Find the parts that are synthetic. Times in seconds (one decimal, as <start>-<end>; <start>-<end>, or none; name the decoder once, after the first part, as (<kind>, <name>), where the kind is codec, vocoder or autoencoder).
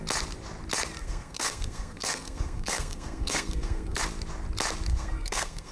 1.0-4.0 (codec, SNAC); 4.9-5.7